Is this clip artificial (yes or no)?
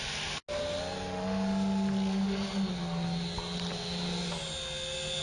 no